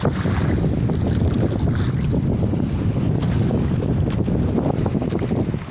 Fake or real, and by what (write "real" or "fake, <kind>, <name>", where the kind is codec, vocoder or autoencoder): real